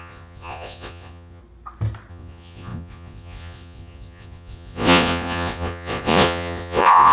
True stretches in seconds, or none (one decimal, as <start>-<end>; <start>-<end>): 1.4-2.1